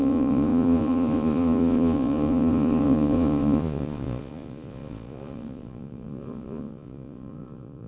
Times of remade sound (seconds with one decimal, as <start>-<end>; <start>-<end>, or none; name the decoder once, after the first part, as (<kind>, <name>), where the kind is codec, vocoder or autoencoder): 0.0-7.9 (vocoder, Vocos)